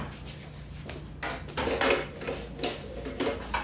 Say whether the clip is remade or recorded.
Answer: recorded